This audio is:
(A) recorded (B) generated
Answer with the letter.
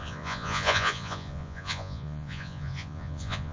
B